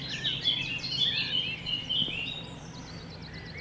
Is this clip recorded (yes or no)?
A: yes